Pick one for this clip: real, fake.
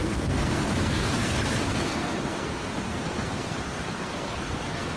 fake